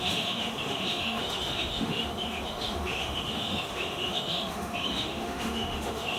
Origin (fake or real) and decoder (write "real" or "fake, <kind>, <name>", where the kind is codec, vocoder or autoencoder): fake, autoencoder, DAC-VAE